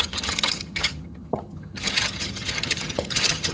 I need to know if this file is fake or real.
fake